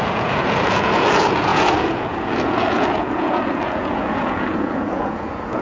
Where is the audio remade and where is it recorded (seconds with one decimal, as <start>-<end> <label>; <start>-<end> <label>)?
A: 0.0-5.6 remade